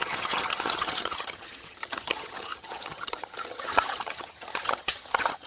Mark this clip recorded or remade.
remade